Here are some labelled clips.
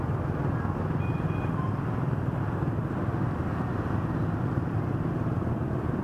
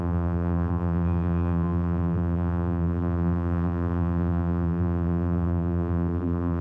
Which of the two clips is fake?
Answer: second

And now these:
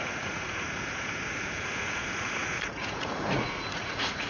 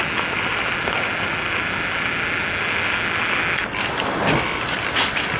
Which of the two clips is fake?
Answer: first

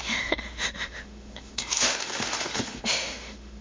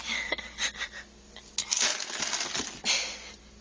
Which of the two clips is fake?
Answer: first